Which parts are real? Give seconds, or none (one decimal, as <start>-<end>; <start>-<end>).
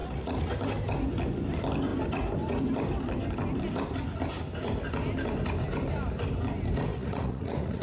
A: 0.5-6.9